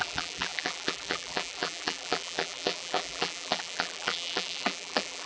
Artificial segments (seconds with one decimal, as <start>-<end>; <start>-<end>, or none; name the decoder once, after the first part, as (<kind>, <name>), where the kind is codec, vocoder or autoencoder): 0.0-5.3 (vocoder, BigVGAN v2)

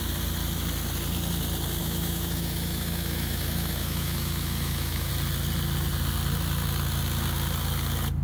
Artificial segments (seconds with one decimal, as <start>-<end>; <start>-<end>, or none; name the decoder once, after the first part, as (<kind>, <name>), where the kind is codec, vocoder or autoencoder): 1.8-5.1 (autoencoder, DAC-VAE)

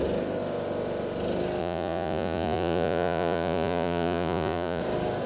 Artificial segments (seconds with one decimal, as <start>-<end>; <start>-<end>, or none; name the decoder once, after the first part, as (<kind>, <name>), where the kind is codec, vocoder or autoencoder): 1.6-4.8 (vocoder, Vocos)

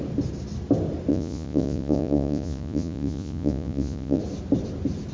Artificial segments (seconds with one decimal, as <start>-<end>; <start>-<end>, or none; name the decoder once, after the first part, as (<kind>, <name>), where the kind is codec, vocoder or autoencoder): 1.1-4.2 (vocoder, Vocos)

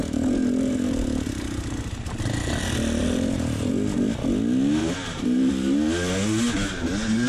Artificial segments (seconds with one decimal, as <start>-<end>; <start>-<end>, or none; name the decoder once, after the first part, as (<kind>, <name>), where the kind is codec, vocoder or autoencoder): 0.0-1.0 (vocoder, BigVGAN v2); 3.0-3.7; 4.8-5.5

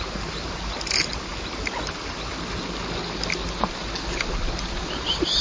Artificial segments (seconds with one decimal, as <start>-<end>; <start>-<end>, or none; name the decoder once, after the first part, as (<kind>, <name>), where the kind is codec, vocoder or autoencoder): none